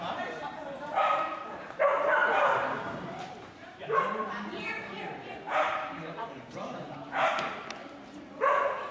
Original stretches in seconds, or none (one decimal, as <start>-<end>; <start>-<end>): none